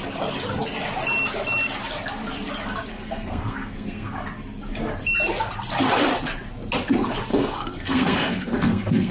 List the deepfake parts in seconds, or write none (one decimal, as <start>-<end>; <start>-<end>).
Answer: 2.9-4.1; 7.3-9.1